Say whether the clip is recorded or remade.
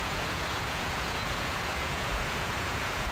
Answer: remade